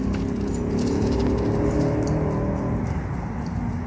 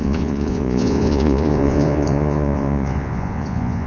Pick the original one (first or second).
first